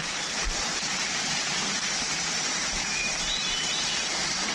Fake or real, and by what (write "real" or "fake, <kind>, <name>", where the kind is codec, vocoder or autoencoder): fake, vocoder, BigVGAN v2